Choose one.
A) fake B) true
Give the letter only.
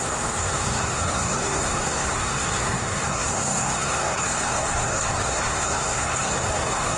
A